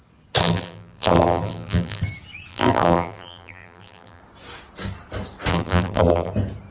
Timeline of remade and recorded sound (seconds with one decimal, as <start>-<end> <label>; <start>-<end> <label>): 0.0-0.4 recorded; 0.4-2.0 remade; 2.0-2.5 recorded; 2.5-4.2 remade; 4.2-5.5 recorded; 5.5-6.3 remade; 6.3-6.7 recorded